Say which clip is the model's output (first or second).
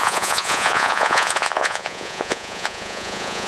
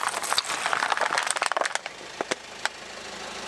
first